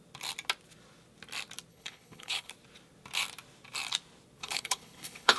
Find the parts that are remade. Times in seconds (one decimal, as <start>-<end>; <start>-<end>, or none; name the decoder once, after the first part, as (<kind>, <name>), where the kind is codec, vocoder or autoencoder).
1.7-2.5 (codec, HILCodec); 4.4-5.4